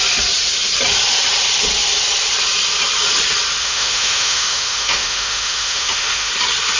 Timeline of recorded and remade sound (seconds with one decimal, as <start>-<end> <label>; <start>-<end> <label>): 0.0-3.6 recorded; 3.6-6.3 remade; 6.3-6.8 recorded